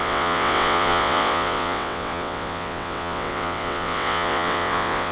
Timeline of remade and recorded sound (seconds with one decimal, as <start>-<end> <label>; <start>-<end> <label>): 0.0-5.1 remade